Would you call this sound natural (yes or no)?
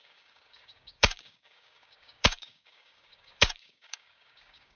no